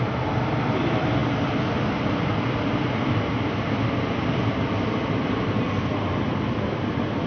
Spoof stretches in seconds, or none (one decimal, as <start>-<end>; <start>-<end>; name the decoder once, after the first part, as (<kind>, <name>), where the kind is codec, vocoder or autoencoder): none